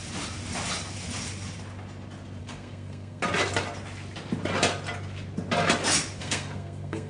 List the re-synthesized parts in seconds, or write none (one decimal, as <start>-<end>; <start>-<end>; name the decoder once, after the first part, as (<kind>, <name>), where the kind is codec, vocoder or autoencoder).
2.4-3.2 (codec, SNAC); 6.2-7.1